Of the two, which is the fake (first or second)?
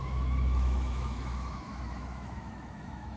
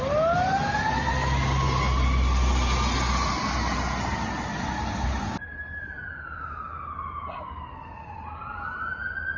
first